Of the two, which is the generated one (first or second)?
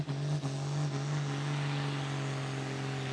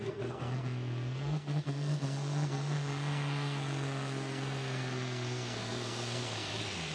second